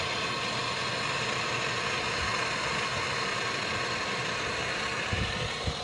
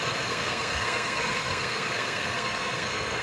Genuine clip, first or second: first